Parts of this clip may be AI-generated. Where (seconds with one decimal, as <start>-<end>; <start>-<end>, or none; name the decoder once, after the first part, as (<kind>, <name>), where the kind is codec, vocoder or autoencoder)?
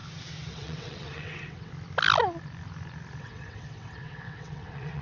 0.5-1.7 (vocoder, WaveNeXt); 3.2-5.0